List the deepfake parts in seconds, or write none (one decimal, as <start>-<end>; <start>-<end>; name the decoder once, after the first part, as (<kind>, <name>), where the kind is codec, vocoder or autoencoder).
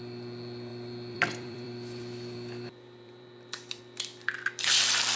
0.7-3.8 (vocoder, BigVGAN v2)